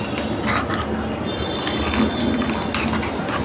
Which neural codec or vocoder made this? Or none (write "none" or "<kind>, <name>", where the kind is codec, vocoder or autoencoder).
none